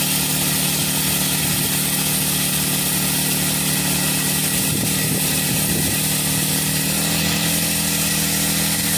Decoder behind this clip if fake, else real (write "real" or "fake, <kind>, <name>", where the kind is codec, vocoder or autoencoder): real